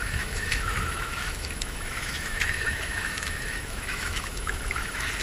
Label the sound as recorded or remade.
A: remade